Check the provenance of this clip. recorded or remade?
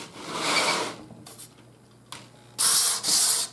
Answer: recorded